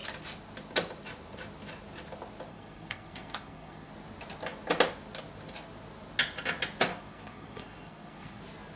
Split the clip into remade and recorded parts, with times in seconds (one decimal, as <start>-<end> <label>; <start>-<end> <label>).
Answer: 0.0-2.5 recorded; 2.5-3.9 remade; 3.9-6.9 recorded; 6.9-8.4 remade; 8.4-8.8 recorded